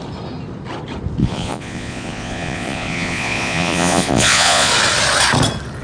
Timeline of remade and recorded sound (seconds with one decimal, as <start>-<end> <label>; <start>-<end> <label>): 0.0-1.2 recorded; 1.2-4.7 remade; 4.7-5.8 recorded